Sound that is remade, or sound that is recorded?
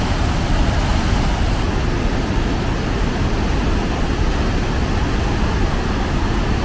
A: recorded